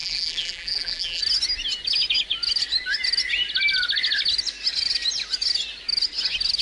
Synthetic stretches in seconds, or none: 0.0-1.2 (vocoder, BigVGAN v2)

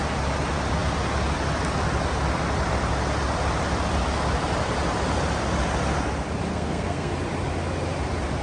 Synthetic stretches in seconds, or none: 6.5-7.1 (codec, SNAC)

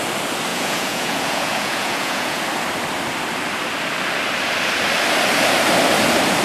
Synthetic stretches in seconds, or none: 0.5-2.4 (vocoder, Vocos)

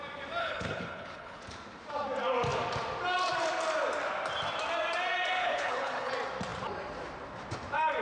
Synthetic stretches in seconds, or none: 0.4-1.4 (codec, HILCodec); 5.4-6.1